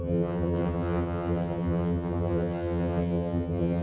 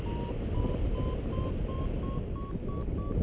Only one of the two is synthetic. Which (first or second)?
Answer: first